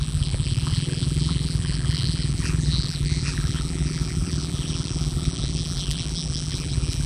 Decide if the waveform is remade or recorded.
remade